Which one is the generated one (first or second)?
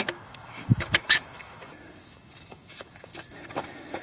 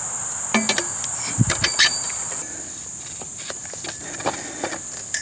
first